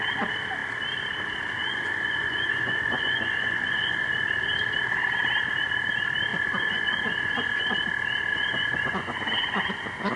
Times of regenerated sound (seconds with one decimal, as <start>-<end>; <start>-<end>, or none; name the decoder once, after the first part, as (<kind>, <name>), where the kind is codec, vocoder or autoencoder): 1.6-4.1 (vocoder, Vocos); 6.3-7.7; 8.3-9.7